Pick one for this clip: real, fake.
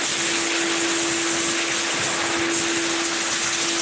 real